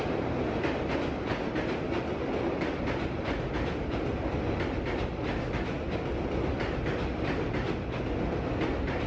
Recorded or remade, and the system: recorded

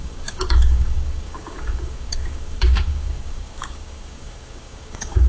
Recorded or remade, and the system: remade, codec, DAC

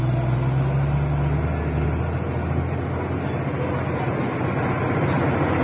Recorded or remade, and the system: recorded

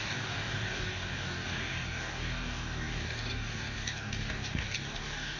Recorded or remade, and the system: remade, codec, DAC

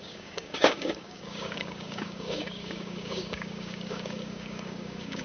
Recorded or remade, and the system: remade, codec, DAC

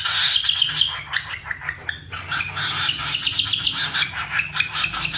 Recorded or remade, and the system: recorded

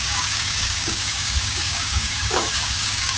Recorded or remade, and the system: remade, codec, DAC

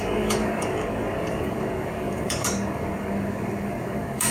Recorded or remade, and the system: remade, codec, DAC